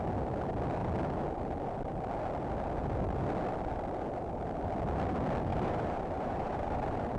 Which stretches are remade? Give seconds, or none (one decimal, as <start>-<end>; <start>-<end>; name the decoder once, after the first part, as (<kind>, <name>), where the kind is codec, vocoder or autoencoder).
5.5-7.2 (vocoder, BigVGAN v2)